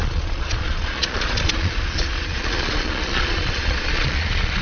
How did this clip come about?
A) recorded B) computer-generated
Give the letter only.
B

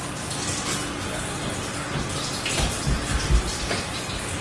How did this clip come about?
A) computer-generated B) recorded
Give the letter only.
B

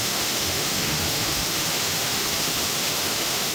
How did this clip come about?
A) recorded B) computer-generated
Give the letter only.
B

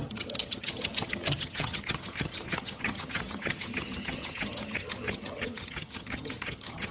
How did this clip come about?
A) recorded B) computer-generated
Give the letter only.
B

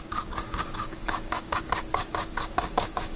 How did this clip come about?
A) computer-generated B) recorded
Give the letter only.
A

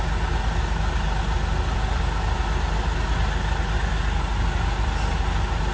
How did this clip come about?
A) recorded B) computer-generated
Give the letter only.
A